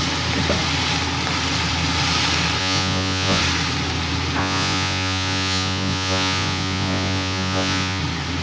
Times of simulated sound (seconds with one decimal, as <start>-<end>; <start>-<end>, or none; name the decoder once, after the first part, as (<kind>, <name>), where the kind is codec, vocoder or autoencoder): 2.6-3.4 (vocoder, Vocos); 4.4-8.0